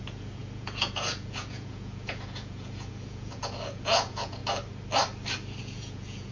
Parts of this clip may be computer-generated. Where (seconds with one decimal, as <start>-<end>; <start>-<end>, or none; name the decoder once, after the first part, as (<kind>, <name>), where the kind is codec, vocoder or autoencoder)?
0.0-4.4 (vocoder, Vocos); 5.6-6.3